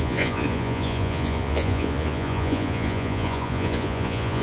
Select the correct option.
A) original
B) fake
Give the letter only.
B